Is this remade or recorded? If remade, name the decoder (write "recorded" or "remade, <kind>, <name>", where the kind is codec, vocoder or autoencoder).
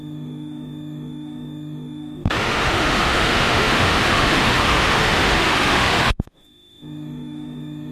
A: remade, autoencoder, DAC-VAE